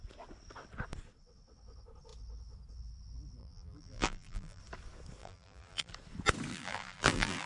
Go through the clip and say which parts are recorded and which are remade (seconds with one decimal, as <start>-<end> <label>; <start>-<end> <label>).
0.0-3.4 recorded; 3.4-4.6 remade; 4.6-5.2 recorded; 5.2-5.9 remade; 5.9-6.5 recorded; 6.5-7.5 remade